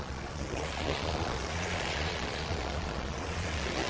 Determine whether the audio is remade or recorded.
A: remade